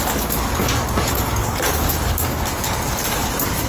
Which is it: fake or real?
fake